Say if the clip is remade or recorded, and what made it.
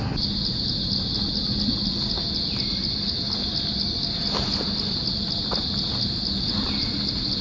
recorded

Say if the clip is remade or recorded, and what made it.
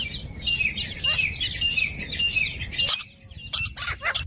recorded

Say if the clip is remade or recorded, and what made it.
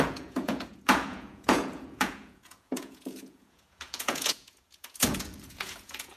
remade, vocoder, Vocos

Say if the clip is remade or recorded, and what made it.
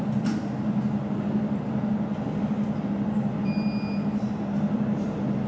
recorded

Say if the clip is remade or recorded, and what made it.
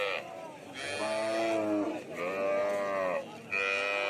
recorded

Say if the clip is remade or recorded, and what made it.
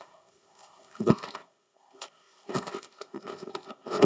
remade, codec, ZipCodec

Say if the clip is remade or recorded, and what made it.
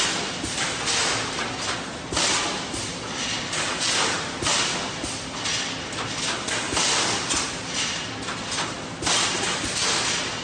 recorded